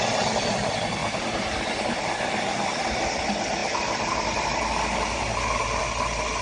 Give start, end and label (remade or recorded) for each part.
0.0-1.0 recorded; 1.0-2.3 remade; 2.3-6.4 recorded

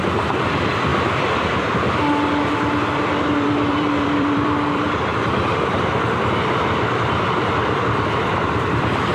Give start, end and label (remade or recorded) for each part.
0.0-0.9 remade; 0.9-3.3 recorded; 3.3-9.1 remade

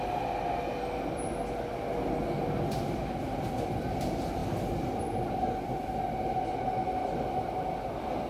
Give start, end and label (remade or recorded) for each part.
0.0-8.3 recorded

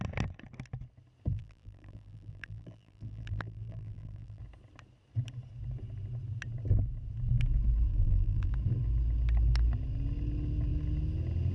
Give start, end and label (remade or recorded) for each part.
0.0-1.3 recorded; 1.3-4.4 remade; 4.4-7.9 recorded; 7.9-8.5 remade; 8.5-11.5 recorded

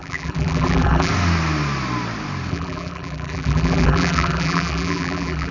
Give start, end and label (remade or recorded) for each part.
0.0-1.1 remade; 1.1-2.5 recorded; 2.5-5.5 remade

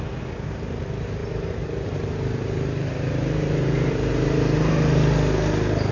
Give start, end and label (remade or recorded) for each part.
0.0-1.2 recorded; 1.2-4.7 remade; 4.7-5.9 recorded